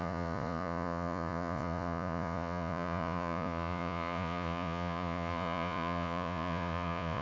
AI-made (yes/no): yes